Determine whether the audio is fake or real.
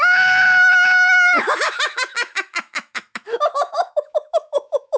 fake